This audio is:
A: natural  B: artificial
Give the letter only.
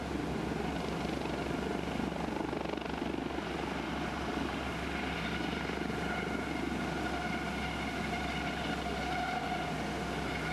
A